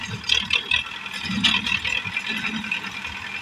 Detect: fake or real real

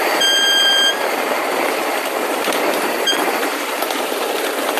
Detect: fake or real fake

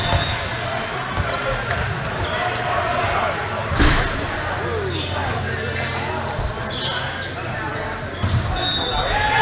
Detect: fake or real real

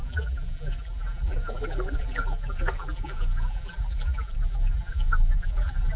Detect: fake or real fake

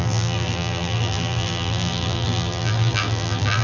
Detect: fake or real fake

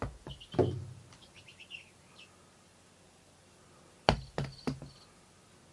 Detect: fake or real real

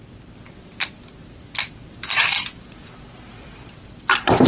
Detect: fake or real fake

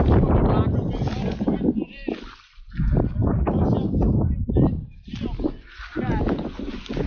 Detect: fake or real real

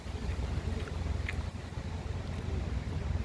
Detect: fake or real real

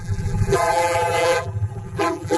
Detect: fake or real fake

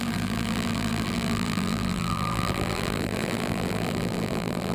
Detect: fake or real fake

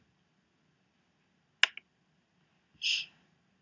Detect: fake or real real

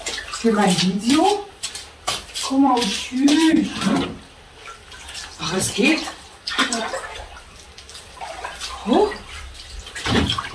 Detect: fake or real fake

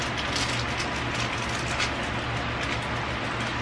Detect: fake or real real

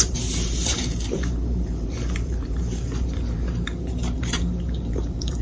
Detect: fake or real fake